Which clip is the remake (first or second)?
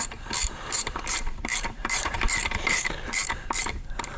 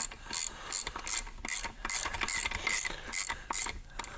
first